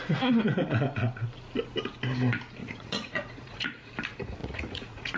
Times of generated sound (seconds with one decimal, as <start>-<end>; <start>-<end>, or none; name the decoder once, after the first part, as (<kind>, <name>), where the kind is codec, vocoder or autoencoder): 2.6-3.9 (vocoder, Vocos); 4.4-5.2